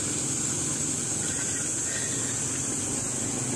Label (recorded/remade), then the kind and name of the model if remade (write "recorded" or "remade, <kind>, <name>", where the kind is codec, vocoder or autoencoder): recorded